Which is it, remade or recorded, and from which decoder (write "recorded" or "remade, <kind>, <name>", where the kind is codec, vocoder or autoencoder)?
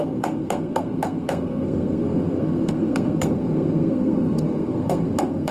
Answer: remade, codec, SNAC